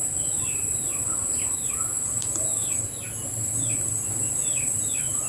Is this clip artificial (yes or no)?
no